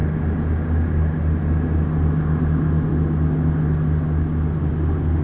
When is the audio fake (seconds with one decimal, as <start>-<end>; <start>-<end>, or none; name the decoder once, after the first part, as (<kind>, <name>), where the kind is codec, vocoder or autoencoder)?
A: none